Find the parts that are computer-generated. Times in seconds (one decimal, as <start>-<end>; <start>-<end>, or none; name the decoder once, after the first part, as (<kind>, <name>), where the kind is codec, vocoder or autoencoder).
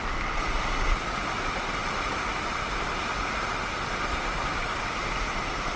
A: none